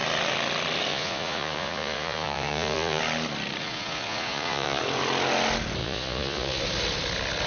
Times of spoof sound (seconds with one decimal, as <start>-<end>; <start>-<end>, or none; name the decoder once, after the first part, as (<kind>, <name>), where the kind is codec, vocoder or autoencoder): 0.9-3.0 (vocoder, Vocos); 3.6-4.8; 5.8-6.6